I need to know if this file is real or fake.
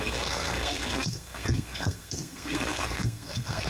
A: fake